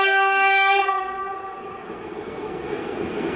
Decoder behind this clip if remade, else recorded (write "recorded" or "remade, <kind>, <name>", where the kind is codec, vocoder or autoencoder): remade, codec, SNAC